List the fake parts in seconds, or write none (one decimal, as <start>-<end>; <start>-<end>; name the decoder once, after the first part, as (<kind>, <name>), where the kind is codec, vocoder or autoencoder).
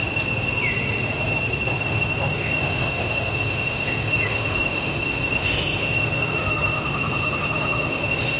1.8-8.4 (autoencoder, DAC-VAE)